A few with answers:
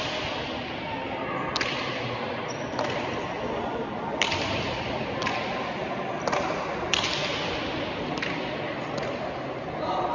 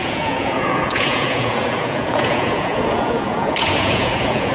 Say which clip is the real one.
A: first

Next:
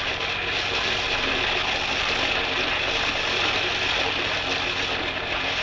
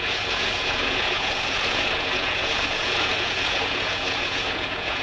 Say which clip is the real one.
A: first